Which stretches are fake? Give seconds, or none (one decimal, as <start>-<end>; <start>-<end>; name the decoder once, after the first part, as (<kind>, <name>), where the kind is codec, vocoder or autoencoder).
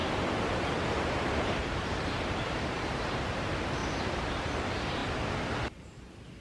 0.7-3.8 (vocoder, BigVGAN v2); 4.6-5.0